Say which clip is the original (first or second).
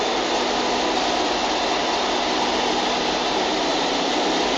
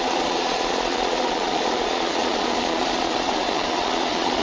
first